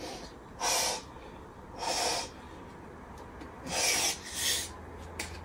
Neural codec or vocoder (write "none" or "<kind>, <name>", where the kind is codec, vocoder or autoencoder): none